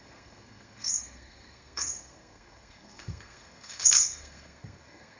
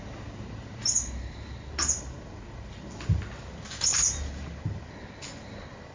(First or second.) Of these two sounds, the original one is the second